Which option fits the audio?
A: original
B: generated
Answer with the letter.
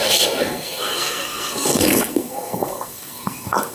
B